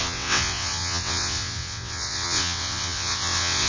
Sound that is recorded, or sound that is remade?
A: remade